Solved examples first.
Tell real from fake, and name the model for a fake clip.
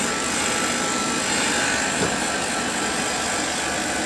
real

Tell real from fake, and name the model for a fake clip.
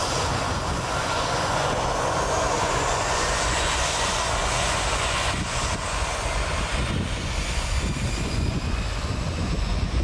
fake, vocoder, Vocos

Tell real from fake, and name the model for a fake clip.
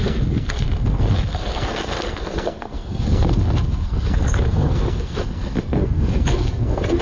fake, codec, SNAC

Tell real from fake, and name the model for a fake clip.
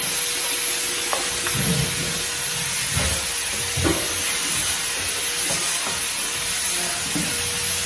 real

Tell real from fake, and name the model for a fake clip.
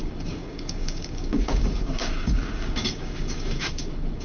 fake, codec, DAC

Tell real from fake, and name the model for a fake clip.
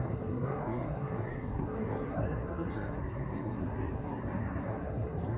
fake, codec, SNAC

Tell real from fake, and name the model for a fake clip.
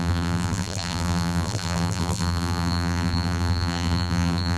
fake, vocoder, BigVGAN v2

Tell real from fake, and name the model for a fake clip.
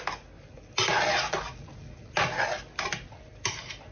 real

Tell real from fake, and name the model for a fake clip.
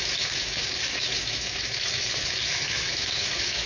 fake, autoencoder, DAC-VAE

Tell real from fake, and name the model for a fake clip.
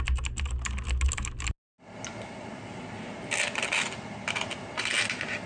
real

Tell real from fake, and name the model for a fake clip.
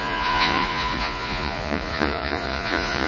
fake, vocoder, Vocos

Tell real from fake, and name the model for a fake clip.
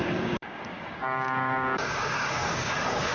fake, codec, DAC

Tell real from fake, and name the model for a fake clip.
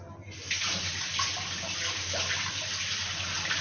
real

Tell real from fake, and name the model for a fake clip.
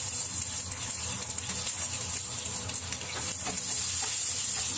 real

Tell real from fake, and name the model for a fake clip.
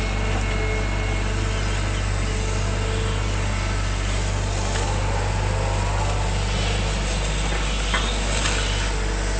real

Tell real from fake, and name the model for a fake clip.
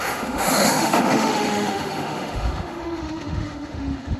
fake, autoencoder, DAC-VAE